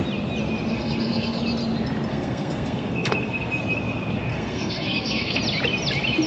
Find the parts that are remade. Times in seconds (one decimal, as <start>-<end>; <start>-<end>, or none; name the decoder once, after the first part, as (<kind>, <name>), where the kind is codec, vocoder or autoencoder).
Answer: 0.7-1.4 (codec, SNAC); 2.1-3.6; 4.3-5.4